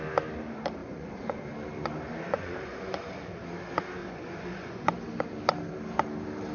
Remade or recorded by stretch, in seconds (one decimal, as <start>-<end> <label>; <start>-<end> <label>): 0.0-0.8 recorded; 0.8-1.4 remade; 1.4-2.3 recorded; 2.3-2.8 remade; 2.8-4.0 recorded; 4.0-4.9 remade; 4.9-6.5 recorded